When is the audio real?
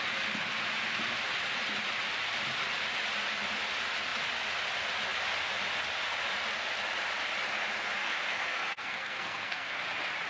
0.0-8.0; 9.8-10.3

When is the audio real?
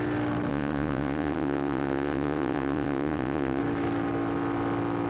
0.0-0.5; 3.6-5.1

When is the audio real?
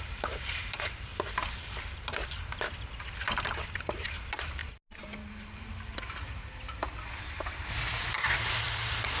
1.1-3.7; 4.6-7.9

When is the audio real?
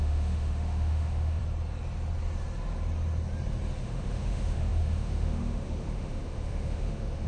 1.4-3.8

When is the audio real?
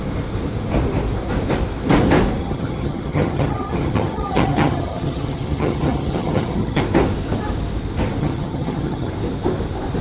0.0-2.4; 6.8-8.2; 9.1-10.0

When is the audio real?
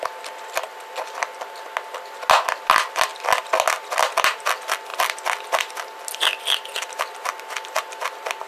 0.0-8.5